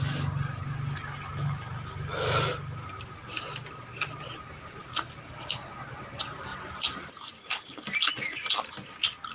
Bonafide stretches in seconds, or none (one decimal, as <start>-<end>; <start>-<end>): 0.0-4.8; 5.7-6.5; 8.1-9.3